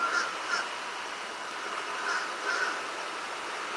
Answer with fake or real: real